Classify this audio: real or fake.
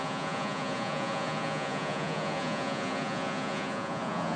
fake